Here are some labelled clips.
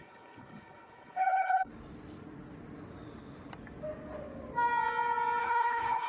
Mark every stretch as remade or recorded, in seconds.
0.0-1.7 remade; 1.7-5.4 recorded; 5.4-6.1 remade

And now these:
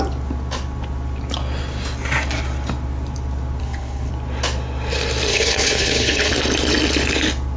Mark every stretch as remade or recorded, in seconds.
0.0-3.6 recorded; 3.6-4.1 remade; 4.1-5.3 recorded; 5.3-6.3 remade; 6.3-7.6 recorded

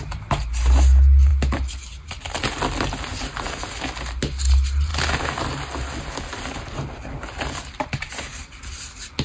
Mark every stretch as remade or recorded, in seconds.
0.0-9.2 recorded

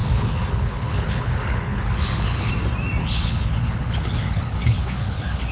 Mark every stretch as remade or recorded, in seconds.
0.0-2.5 remade; 2.5-3.0 recorded; 3.0-5.5 remade

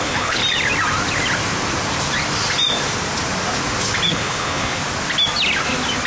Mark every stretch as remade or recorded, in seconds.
0.0-0.4 remade; 0.4-4.1 recorded; 4.1-4.8 remade; 4.8-6.1 recorded

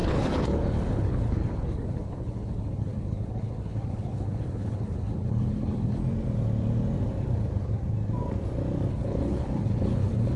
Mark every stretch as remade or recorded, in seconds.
0.0-6.0 remade; 6.0-8.9 recorded; 8.9-10.4 remade